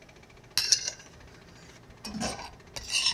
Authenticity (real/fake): real